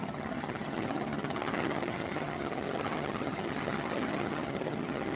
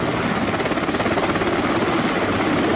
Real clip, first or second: second